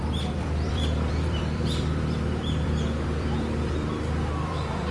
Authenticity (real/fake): fake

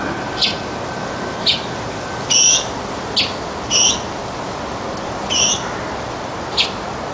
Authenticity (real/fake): real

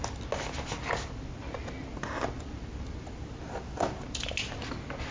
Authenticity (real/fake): real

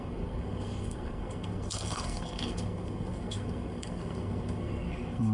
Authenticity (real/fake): fake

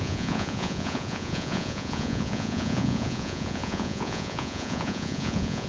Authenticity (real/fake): fake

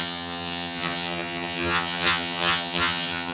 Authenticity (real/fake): fake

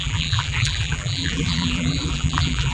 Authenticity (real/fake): fake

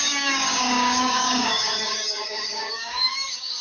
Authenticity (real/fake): fake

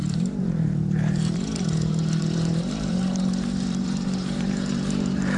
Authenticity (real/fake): fake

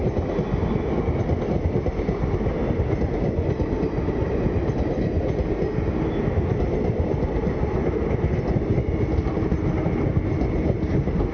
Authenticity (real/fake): real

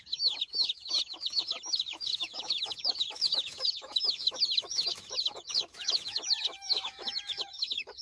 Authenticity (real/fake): fake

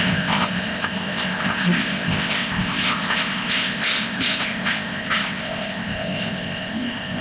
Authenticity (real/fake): fake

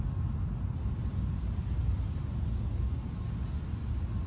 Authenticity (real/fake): real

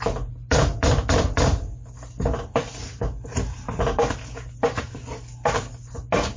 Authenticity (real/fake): real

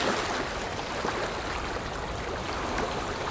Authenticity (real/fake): real